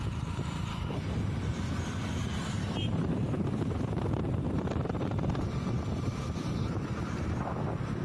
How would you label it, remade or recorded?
remade